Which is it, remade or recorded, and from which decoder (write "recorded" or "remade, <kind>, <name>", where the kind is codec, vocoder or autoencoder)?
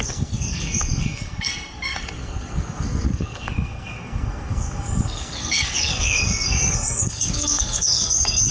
remade, codec, SNAC